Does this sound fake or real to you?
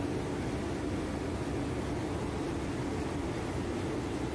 real